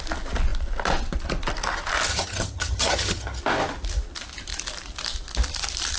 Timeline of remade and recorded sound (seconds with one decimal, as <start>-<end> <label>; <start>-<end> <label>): 0.0-2.1 recorded; 2.1-3.4 remade; 3.4-6.0 recorded